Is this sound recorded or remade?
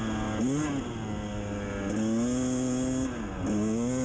recorded